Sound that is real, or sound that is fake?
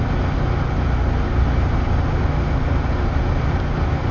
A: real